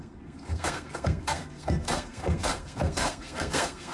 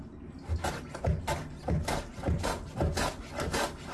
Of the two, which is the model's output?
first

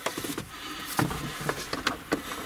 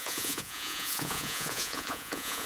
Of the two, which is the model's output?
second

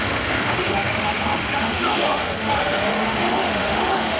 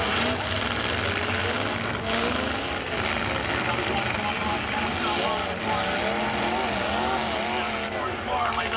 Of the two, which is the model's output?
first